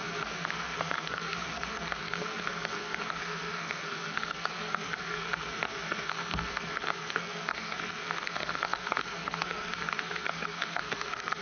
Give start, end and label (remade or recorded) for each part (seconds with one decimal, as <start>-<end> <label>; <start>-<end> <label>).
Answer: 0.0-11.4 remade